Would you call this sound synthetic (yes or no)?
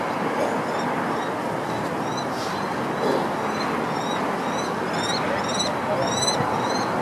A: no